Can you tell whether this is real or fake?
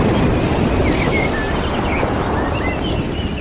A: real